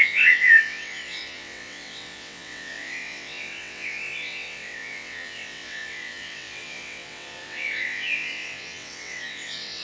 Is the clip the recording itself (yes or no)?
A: no